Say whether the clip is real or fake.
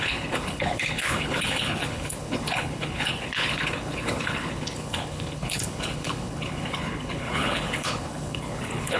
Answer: fake